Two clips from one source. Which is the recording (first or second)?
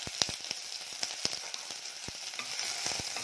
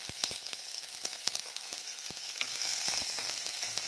first